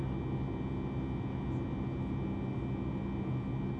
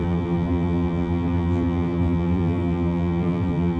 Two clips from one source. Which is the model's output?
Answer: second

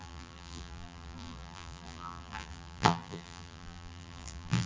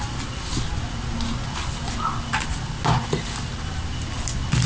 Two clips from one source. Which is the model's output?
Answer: first